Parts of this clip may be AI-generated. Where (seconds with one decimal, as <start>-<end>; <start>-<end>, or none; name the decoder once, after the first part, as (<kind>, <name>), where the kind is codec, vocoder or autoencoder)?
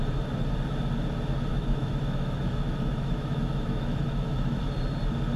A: 1.5-4.6 (autoencoder, DAC-VAE)